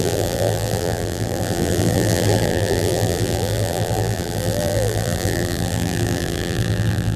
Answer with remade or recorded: remade